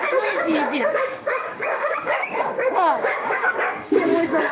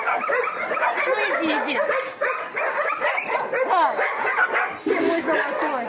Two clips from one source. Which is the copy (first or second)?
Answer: first